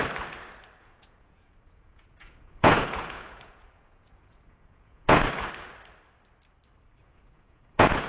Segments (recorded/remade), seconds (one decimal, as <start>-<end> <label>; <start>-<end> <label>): 0.0-0.8 recorded; 0.8-5.5 remade; 5.5-7.0 recorded; 7.0-8.1 remade